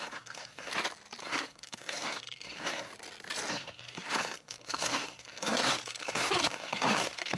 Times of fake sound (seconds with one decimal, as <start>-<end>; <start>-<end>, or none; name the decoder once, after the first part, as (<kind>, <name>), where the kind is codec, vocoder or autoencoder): 0.0-0.7 (codec, SNAC); 1.2-2.9; 3.5-7.4